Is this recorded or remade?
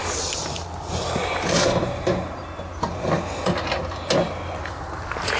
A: recorded